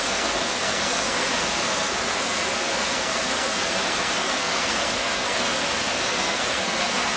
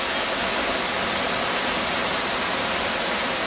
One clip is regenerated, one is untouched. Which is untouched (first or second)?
second